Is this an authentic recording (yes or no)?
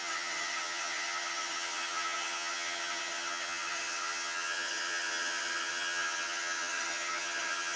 no